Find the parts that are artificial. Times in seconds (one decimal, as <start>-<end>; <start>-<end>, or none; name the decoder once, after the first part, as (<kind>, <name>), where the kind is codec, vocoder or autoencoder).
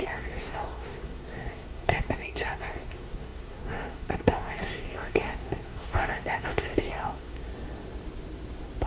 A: 0.0-7.5 (codec, SNAC)